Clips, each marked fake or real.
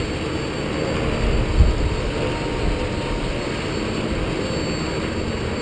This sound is real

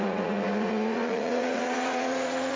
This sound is fake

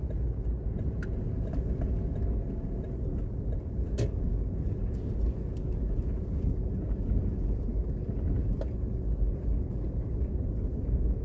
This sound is real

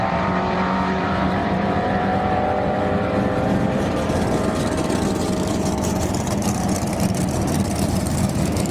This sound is fake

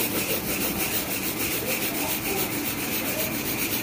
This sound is real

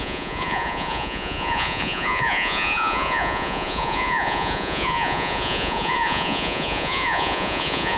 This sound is fake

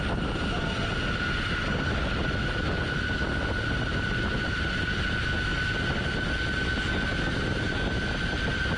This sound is real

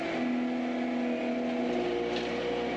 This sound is real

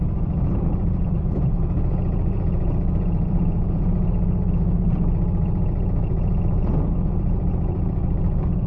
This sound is fake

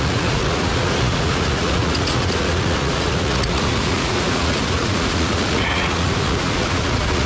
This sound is fake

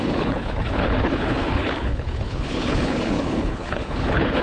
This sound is fake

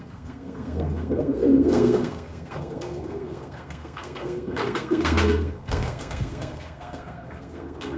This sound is fake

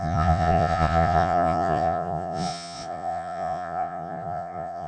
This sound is fake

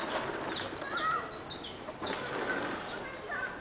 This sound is real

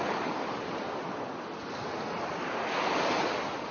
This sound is real